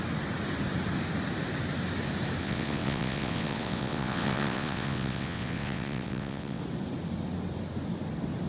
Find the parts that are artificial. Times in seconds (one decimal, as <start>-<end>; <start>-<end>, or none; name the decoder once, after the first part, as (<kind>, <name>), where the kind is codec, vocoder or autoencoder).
2.4-6.6 (vocoder, WaveNeXt)